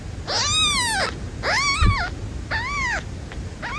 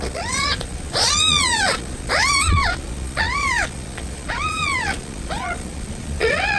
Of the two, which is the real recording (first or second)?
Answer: first